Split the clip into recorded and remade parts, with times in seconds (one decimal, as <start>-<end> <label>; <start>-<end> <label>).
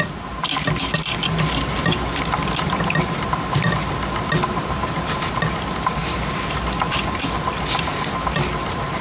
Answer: 0.0-9.0 recorded